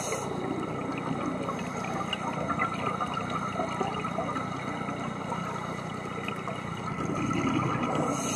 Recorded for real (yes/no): yes